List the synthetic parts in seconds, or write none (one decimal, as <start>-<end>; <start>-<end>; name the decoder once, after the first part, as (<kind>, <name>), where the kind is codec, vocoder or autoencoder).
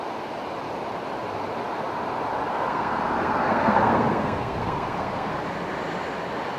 2.5-5.3 (codec, SNAC)